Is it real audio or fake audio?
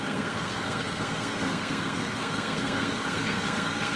fake